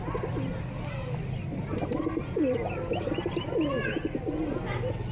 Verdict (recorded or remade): recorded